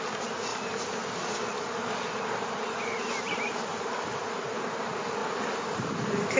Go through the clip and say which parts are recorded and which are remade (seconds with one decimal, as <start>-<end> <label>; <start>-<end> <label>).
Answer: 0.0-0.5 recorded; 0.5-4.3 remade; 4.3-5.2 recorded; 5.2-6.4 remade